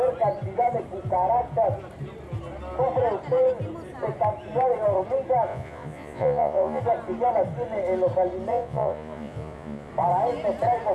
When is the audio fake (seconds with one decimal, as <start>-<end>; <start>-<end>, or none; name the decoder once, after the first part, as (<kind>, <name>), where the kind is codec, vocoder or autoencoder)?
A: 5.5-6.8 (vocoder, Vocos); 8.5-9.9